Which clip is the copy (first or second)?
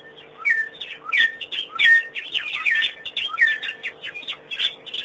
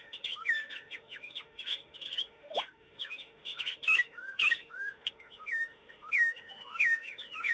second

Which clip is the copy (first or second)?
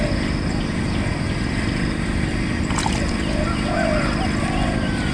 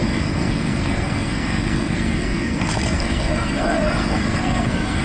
second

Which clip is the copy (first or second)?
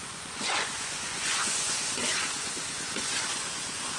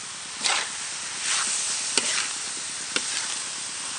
first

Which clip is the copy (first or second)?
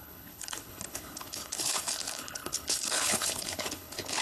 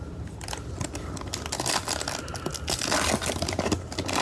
first